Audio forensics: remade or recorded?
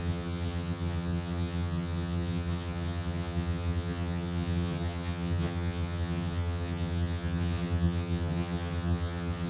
remade